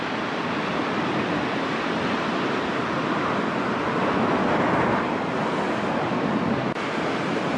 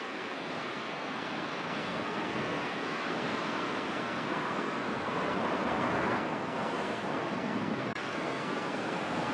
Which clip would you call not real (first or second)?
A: second